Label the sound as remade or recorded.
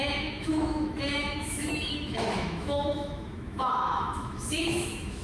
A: remade